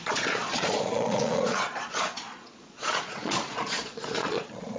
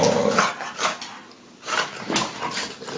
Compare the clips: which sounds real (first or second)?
second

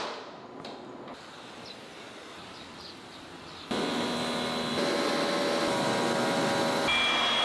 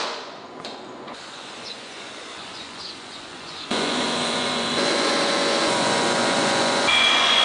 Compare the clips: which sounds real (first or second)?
first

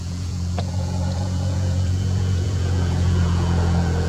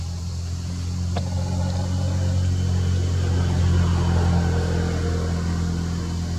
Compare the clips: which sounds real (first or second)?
second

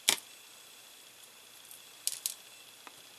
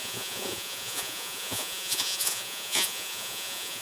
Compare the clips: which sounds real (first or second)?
first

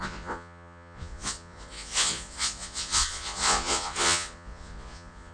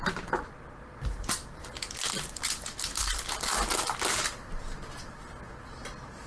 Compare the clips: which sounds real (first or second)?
second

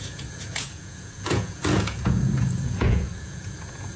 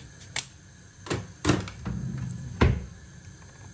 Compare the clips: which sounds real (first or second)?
second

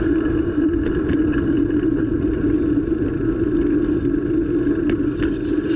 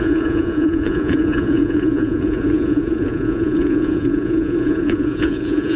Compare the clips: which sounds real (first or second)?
first